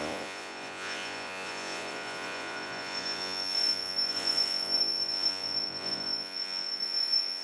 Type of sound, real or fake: fake